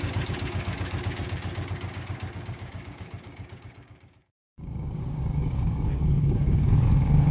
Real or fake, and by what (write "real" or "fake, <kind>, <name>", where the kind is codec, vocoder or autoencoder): fake, codec, DAC